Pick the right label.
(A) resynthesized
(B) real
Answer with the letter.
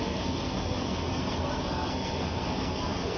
A